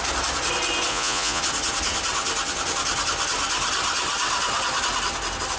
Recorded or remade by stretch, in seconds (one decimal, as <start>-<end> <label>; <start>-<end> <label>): 0.0-0.9 recorded; 0.9-1.4 remade; 1.4-5.6 recorded